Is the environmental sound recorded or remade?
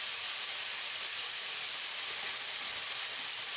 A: recorded